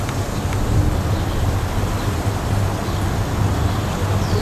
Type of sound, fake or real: real